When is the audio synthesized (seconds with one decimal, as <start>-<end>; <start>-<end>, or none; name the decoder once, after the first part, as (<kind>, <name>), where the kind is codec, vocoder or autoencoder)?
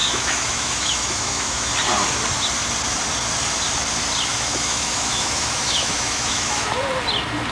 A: 0.0-1.7 (autoencoder, DAC-VAE); 4.3-6.8